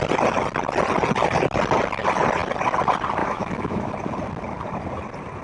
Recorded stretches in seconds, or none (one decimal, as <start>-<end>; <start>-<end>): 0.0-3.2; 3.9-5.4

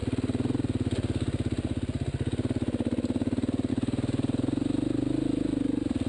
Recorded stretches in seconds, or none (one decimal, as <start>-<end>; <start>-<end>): 0.0-5.5

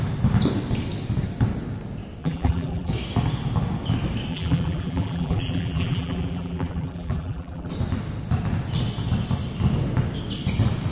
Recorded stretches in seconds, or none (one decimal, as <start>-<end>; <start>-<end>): 0.0-2.2; 2.9-4.3; 7.7-10.9